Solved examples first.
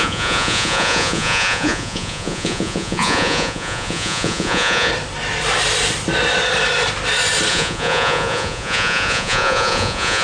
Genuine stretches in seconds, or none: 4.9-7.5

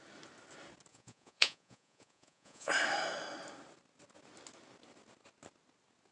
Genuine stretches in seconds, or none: 0.0-0.9; 2.7-6.1

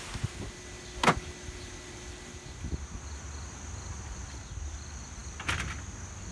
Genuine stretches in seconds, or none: 0.0-6.3

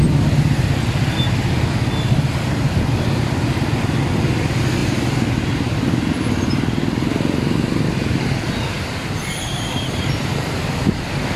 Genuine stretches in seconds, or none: 0.0-11.4